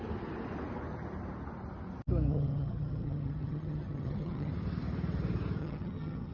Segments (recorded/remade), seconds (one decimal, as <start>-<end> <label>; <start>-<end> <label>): 0.0-2.3 recorded; 2.3-4.5 remade; 4.5-5.6 recorded; 5.6-6.3 remade